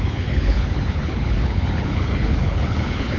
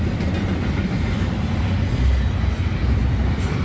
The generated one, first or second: first